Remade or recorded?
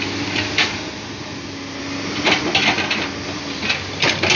recorded